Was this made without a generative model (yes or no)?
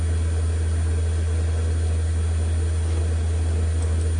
yes